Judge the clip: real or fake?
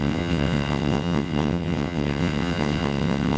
fake